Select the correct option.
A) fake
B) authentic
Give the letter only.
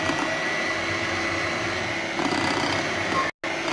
B